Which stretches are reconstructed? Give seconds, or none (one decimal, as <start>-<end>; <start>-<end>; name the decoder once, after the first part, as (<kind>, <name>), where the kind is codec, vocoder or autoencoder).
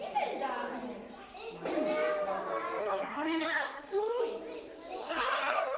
2.8-4.2 (codec, SNAC); 5.0-5.8